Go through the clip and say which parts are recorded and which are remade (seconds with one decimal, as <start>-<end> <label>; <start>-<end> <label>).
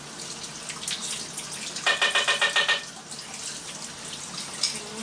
0.0-5.0 recorded